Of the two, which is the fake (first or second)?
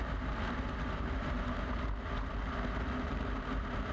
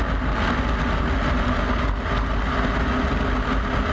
first